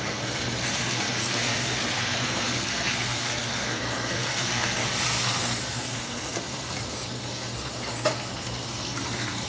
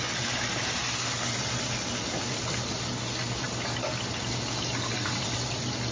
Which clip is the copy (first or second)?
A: first